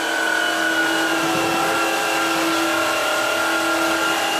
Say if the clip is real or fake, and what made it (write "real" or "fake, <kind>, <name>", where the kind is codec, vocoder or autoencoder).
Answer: real